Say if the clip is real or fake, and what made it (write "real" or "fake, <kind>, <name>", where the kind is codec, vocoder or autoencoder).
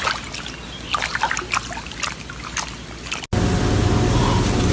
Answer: real